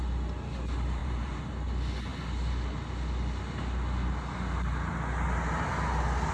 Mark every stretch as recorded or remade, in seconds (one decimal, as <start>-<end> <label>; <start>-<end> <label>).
0.0-1.0 recorded; 1.0-1.5 remade; 1.5-6.3 recorded